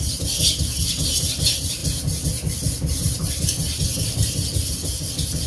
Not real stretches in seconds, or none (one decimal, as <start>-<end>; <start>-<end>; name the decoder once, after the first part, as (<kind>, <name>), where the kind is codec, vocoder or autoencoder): none